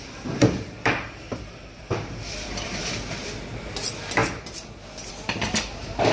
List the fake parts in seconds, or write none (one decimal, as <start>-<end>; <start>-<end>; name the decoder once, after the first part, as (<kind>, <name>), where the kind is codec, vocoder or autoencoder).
0.4-2.8 (vocoder, BigVGAN v2)